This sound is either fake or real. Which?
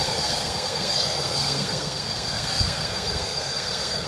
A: fake